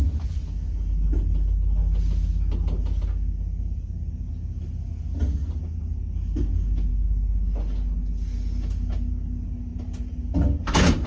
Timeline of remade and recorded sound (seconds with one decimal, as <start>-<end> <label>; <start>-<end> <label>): 0.0-11.1 recorded